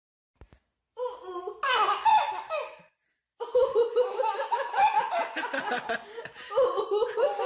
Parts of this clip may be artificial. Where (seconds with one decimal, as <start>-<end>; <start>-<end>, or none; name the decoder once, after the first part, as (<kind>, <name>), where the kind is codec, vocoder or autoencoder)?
none